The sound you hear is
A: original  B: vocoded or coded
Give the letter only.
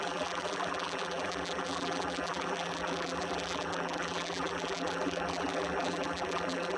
B